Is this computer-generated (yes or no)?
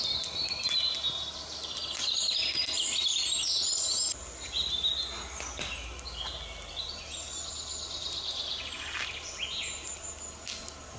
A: no